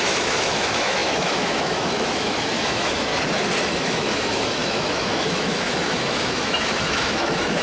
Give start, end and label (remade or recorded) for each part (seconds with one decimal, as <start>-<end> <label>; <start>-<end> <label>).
0.0-3.1 remade; 3.1-3.7 recorded; 3.7-7.6 remade